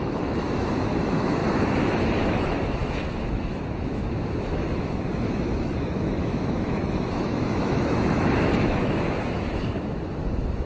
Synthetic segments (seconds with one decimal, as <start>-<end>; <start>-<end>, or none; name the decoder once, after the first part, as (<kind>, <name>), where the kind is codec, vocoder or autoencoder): 0.0-1.4 (autoencoder, DAC-VAE); 2.0-10.7